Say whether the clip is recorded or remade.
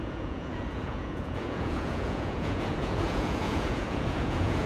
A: remade